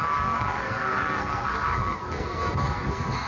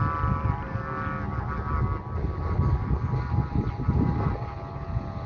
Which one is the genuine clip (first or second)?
second